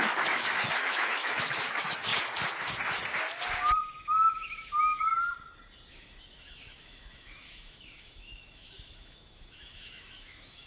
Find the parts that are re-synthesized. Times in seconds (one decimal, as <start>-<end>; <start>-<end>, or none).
0.0-2.1; 3.8-5.1; 5.9-10.7